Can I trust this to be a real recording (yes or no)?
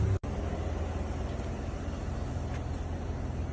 yes